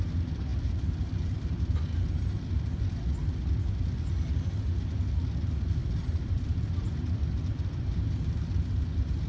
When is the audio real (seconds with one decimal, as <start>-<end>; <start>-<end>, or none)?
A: 0.0-5.8; 8.0-9.3

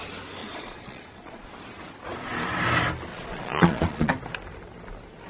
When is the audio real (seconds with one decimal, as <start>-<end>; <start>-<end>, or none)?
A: 0.0-0.4; 1.5-3.1; 4.1-5.3